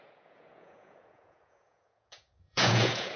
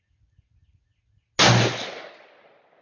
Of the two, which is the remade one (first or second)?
first